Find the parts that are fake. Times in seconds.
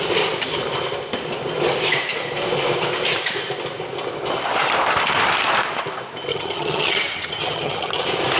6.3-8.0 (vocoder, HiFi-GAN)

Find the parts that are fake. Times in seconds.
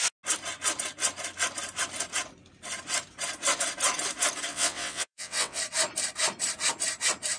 4.5-5.6 (vocoder, WaveNeXt)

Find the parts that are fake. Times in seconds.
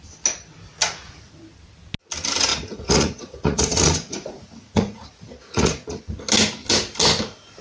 0.8-1.3 (vocoder, Vocos); 2.5-6.0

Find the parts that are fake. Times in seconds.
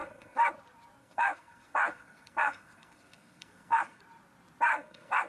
0.0-0.5 (codec, SNAC); 1.0-4.0; 4.7-5.3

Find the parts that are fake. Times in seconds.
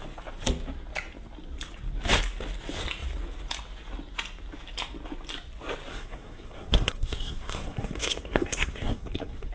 5.9-9.5 (codec, SNAC)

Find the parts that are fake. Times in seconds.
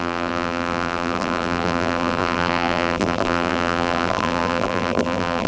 0.0-5.5 (vocoder, BigVGAN v2)